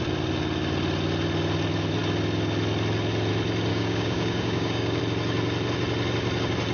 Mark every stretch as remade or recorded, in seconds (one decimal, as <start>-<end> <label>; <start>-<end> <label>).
0.0-3.7 recorded; 3.7-5.0 remade; 5.0-6.7 recorded